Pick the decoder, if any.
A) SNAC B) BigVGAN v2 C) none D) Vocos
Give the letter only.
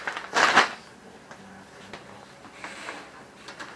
C